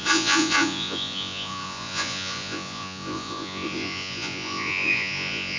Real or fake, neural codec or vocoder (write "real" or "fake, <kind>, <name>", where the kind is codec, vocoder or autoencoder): fake, vocoder, Vocos